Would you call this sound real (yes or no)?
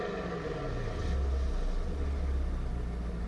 yes